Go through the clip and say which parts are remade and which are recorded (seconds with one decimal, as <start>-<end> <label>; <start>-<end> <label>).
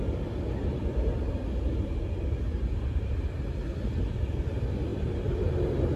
0.0-4.9 recorded; 4.9-5.5 remade; 5.5-6.0 recorded